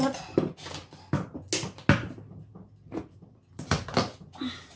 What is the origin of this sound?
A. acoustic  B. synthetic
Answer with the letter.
A